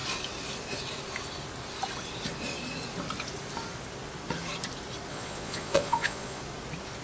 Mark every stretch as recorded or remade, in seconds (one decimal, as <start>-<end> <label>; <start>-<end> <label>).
0.0-5.1 recorded; 5.1-6.4 remade; 6.4-7.0 recorded